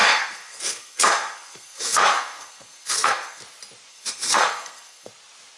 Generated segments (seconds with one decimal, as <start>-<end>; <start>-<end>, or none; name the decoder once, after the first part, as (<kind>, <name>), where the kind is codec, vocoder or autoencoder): 0.0-3.4 (codec, SNAC); 3.9-5.1